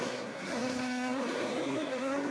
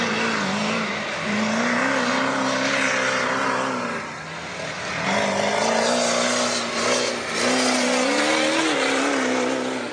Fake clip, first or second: first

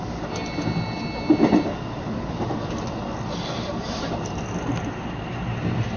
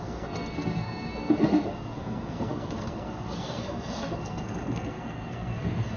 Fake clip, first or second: second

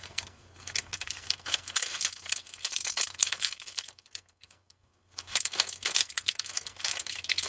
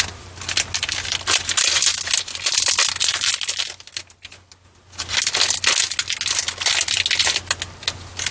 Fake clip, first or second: first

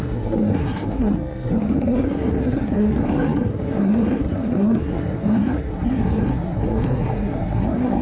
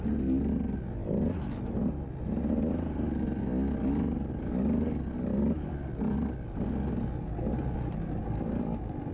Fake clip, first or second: first